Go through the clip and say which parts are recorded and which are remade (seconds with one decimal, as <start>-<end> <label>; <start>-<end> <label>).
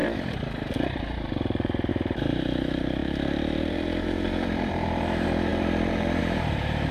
0.0-6.9 remade